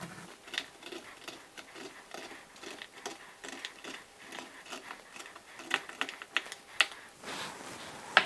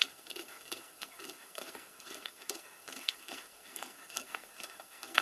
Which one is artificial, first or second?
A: second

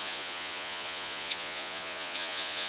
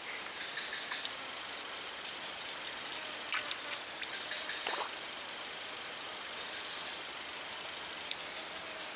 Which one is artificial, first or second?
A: first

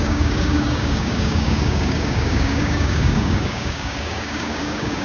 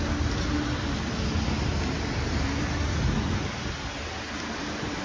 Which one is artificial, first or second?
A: first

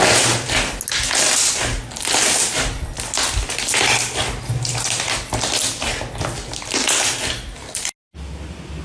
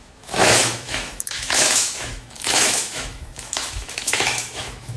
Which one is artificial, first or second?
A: second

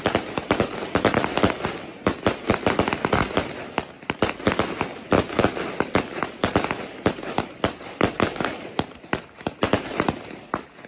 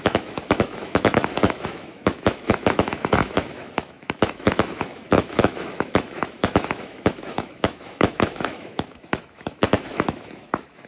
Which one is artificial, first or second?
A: second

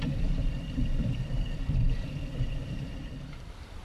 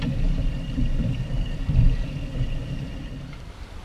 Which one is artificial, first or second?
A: first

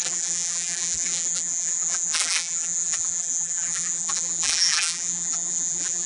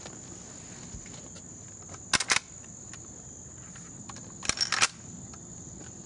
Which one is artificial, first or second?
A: first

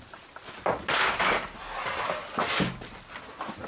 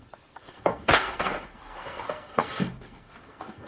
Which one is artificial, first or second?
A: second